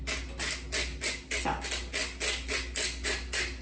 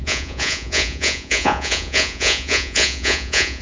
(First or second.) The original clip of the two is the first